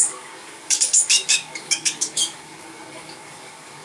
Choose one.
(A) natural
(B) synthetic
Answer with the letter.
B